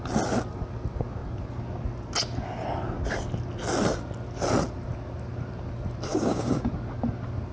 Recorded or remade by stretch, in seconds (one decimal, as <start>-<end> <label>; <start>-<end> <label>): 0.0-6.1 recorded; 6.1-6.7 remade; 6.7-7.5 recorded